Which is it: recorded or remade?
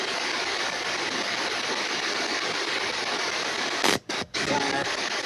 remade